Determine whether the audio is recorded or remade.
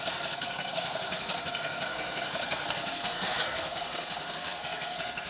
remade